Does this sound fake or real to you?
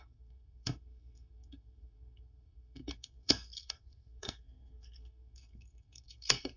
fake